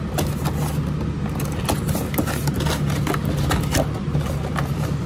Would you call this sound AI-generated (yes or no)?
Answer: no